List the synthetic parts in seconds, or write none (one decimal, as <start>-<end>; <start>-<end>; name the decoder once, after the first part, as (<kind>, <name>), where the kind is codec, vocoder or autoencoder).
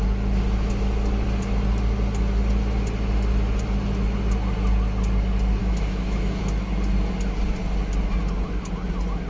5.6-6.4 (autoencoder, DAC-VAE)